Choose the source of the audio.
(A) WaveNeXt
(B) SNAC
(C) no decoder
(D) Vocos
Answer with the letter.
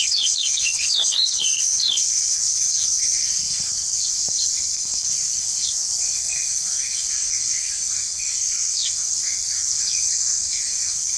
B